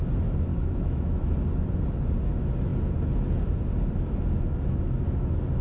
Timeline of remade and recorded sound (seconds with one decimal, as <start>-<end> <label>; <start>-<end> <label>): 0.0-0.5 recorded; 0.5-1.3 remade; 1.3-5.6 recorded

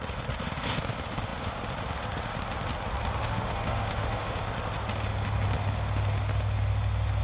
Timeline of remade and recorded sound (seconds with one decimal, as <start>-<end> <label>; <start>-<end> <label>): 0.0-3.2 recorded; 3.2-4.4 remade; 4.4-7.2 recorded

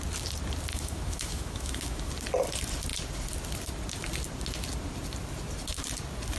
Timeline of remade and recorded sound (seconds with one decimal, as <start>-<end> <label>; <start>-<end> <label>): 0.0-0.7 recorded; 0.7-2.1 remade; 2.1-6.4 recorded

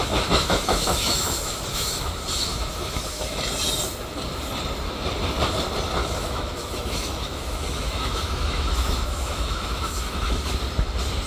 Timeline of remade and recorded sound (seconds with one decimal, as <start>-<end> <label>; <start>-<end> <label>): 0.0-2.1 remade; 2.1-2.5 recorded; 2.5-3.4 remade; 3.4-6.0 recorded; 6.0-10.6 remade; 10.6-11.3 recorded

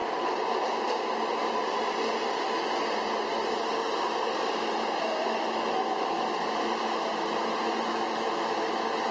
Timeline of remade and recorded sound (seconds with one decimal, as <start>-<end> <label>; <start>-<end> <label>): 0.0-5.0 recorded; 5.0-9.1 remade

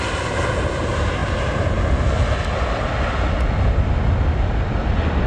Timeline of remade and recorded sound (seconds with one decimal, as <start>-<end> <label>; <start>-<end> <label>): 0.0-5.3 recorded